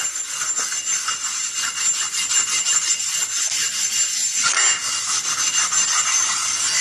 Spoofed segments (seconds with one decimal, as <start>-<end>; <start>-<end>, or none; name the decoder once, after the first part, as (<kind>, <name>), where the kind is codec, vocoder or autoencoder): none